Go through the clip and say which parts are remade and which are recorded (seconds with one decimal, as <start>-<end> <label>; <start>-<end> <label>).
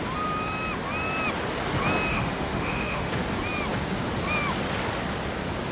0.0-2.1 recorded; 2.1-3.1 remade; 3.1-5.7 recorded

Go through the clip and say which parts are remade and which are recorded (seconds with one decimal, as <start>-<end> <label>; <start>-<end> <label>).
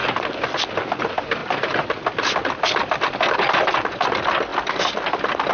0.0-5.5 recorded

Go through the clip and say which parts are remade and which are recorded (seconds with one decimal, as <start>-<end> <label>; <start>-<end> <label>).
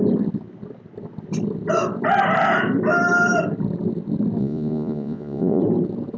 0.0-4.4 recorded; 4.4-5.6 remade; 5.6-6.2 recorded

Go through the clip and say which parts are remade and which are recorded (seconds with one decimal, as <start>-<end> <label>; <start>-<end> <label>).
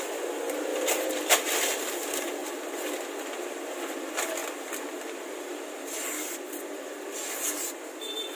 0.0-0.7 recorded; 0.7-1.3 remade; 1.3-8.3 recorded